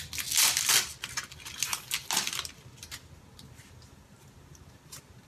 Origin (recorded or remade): recorded